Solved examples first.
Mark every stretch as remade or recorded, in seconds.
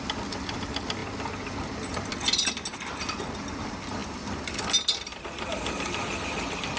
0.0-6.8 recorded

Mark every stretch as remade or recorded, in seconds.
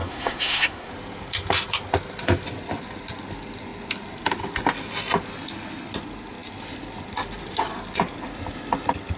0.0-0.9 remade; 0.9-9.2 recorded